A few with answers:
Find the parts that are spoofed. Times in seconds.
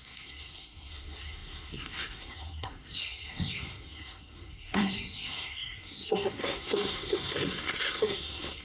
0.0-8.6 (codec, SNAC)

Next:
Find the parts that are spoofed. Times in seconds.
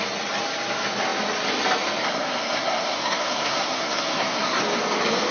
2.0-4.6 (codec, SNAC)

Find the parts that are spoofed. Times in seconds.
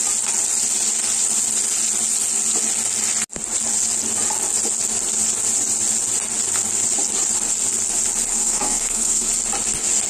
8.3-9.3 (codec, SNAC)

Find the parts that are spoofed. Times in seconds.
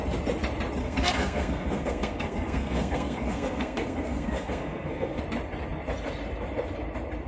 0.8-5.2 (codec, SNAC)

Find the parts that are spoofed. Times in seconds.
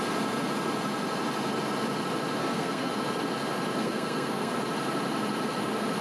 2.4-2.9 (codec, SNAC); 3.8-4.5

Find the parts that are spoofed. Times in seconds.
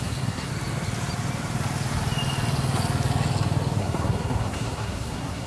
0.0-0.5 (codec, SNAC); 3.8-5.5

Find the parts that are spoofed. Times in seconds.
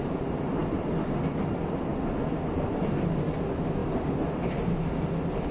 none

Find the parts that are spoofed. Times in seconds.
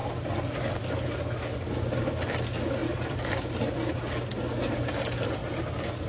none